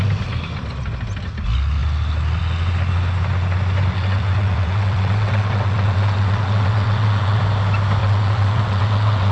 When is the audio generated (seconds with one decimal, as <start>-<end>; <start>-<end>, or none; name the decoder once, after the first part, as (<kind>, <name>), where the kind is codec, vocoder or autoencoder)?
3.9-7.4 (vocoder, WaveNeXt); 8.0-9.3